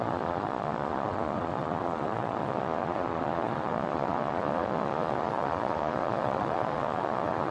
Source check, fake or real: fake